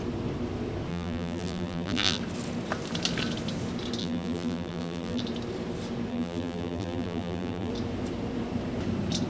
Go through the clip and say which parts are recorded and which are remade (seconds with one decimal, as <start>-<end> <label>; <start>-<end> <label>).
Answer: 0.0-0.9 recorded; 0.9-2.2 remade; 2.2-4.0 recorded; 4.0-5.2 remade; 5.2-6.1 recorded; 6.1-7.7 remade; 7.7-9.3 recorded